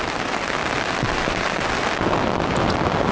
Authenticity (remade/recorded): recorded